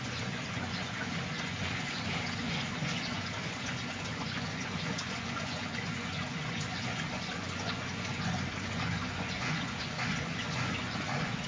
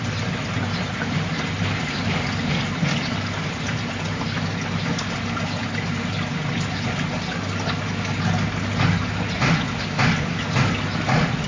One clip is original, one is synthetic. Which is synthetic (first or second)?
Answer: first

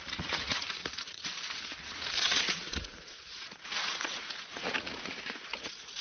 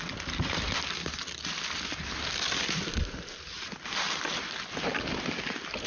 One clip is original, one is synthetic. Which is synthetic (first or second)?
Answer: first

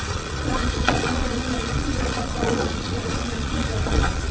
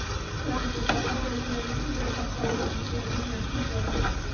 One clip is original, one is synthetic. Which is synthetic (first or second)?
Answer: first